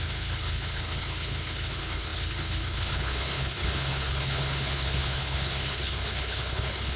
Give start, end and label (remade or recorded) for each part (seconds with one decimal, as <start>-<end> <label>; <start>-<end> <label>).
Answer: 0.0-7.0 remade